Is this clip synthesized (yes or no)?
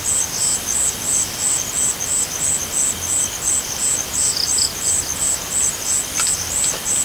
no